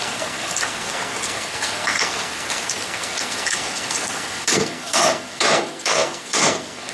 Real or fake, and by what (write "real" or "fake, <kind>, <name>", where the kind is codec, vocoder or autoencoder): fake, codec, SNAC